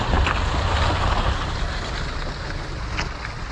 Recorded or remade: recorded